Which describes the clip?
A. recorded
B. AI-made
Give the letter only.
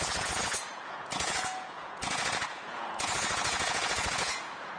B